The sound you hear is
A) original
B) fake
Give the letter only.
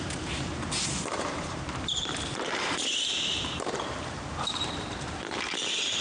B